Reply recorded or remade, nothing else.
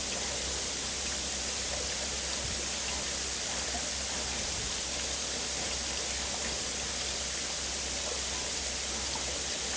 recorded